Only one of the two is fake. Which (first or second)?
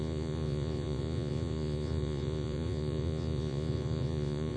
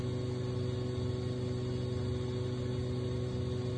first